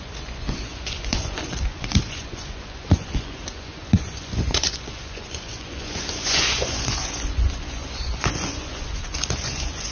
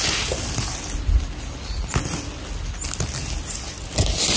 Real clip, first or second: second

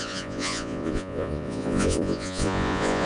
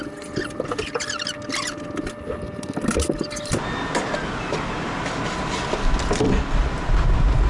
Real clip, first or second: second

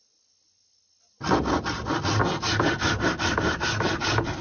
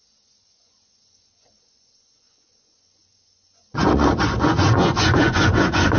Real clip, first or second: first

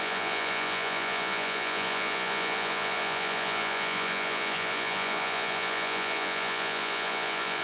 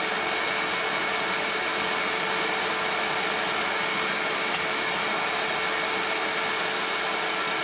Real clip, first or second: second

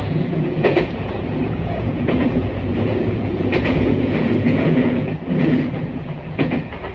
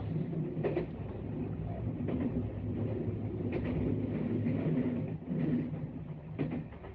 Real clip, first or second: second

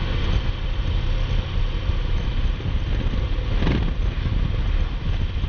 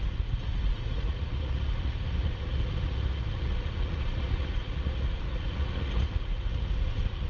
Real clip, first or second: first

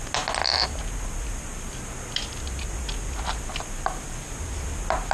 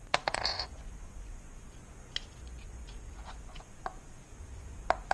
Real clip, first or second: first